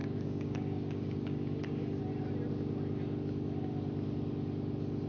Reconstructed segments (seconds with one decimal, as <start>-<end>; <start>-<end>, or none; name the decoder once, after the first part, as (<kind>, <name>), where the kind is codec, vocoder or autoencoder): 0.0-2.0 (codec, DAC)